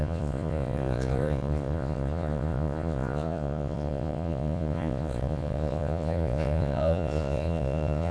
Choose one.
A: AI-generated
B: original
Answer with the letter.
A